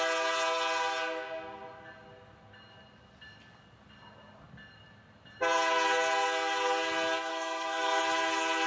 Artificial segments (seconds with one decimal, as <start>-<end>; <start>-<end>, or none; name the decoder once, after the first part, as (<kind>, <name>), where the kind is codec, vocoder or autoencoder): 7.3-8.0 (codec, SNAC)